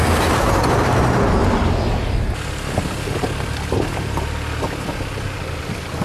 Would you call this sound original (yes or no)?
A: yes